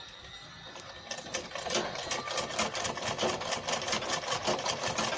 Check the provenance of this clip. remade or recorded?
recorded